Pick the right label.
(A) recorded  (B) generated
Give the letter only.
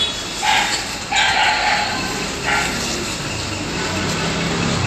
A